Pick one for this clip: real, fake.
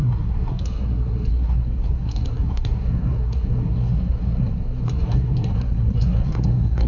fake